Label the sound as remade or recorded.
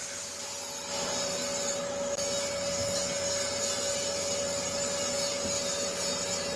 recorded